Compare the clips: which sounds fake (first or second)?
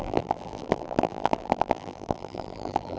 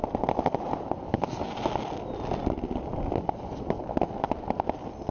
first